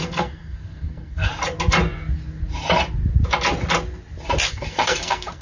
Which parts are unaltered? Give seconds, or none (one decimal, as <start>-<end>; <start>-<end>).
1.3-4.5